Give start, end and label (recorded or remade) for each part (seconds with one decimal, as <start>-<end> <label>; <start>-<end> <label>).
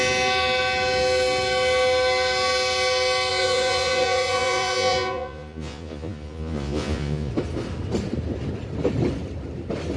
0.0-3.3 recorded; 3.3-7.3 remade; 7.3-10.0 recorded